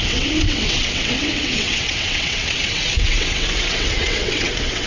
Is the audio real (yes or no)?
no